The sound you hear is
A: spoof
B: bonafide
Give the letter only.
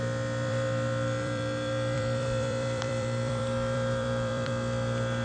A